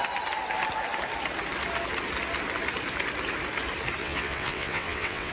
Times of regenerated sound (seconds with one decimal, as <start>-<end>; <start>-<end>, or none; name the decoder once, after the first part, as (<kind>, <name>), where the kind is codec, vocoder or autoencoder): 4.0-5.3 (vocoder, WaveNeXt)